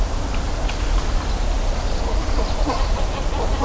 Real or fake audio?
real